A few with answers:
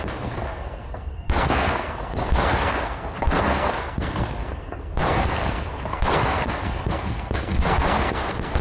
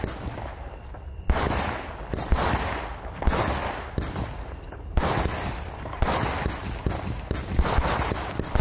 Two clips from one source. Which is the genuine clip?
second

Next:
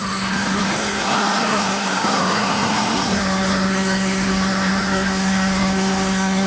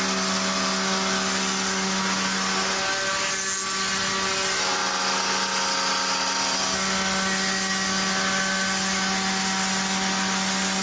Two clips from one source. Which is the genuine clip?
second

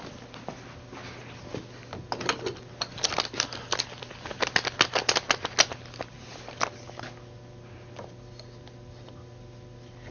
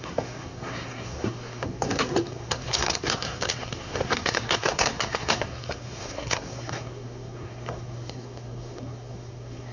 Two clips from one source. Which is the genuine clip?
first